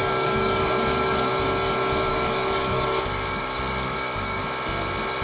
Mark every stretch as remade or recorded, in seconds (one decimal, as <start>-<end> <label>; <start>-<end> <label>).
0.0-1.3 remade; 1.3-2.1 recorded; 2.1-4.4 remade; 4.4-5.2 recorded